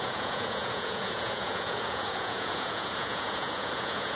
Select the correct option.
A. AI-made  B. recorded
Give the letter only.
A